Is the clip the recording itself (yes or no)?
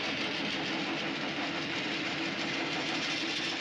yes